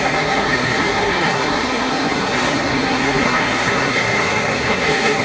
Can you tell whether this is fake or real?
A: fake